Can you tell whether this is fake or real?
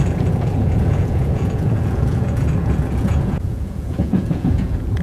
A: fake